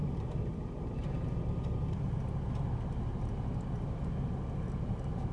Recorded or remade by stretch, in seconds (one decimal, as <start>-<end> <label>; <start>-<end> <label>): 0.0-2.5 remade; 2.5-5.3 recorded